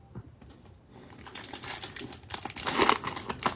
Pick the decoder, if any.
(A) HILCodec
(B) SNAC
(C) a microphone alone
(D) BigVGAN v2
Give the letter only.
C